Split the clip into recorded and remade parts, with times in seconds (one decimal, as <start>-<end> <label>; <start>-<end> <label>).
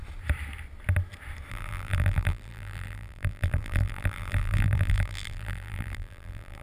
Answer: 0.0-1.5 recorded; 1.5-6.6 remade